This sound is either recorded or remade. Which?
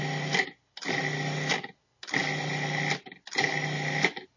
recorded